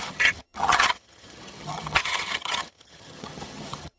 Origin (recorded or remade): remade